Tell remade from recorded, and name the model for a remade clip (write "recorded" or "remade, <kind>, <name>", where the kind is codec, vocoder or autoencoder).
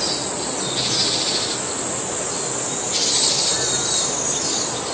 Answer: recorded